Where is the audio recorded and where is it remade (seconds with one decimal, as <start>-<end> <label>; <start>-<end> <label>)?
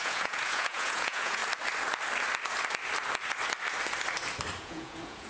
0.0-1.4 remade; 1.4-4.6 recorded; 4.6-5.3 remade